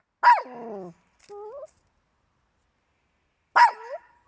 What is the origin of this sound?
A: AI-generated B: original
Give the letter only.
B